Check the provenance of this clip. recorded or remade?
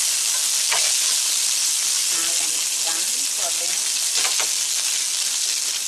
recorded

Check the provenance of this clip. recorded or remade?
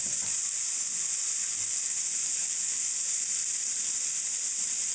remade